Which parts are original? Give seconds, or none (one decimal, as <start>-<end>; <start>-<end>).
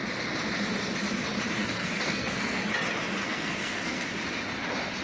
0.0-1.6; 2.6-3.2; 4.1-5.0